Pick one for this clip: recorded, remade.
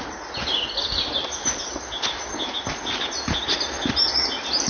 recorded